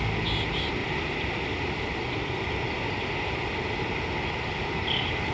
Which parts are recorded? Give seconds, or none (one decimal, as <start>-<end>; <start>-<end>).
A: 0.0-0.8; 2.7-5.3